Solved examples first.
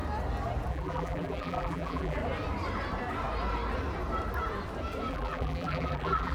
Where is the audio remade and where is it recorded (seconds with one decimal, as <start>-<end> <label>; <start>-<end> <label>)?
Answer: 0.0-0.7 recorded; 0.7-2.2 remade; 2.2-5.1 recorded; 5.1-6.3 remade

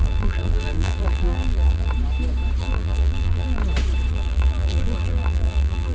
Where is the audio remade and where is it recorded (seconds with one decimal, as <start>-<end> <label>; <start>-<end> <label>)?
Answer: 0.0-1.9 remade; 1.9-2.6 recorded; 2.6-3.6 remade; 3.6-4.1 recorded; 4.1-5.9 remade

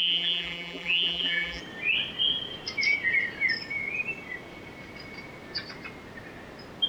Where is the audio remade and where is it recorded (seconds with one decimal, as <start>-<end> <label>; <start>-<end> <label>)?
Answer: 0.0-1.6 remade; 1.6-6.9 recorded